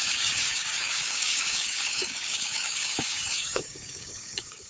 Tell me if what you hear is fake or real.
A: fake